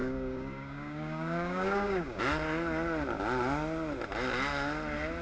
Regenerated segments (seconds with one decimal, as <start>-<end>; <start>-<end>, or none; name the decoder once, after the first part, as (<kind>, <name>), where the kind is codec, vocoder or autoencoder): 0.0-2.2 (codec, DAC)